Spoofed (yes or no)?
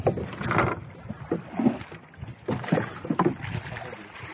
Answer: yes